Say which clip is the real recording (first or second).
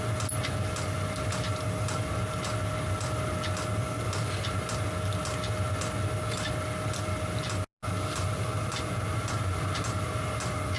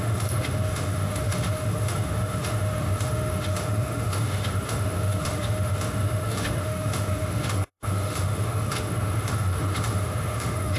first